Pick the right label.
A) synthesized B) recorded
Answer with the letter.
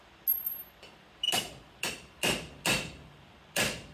B